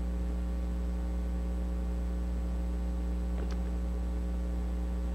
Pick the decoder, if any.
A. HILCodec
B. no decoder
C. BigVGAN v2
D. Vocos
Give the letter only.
B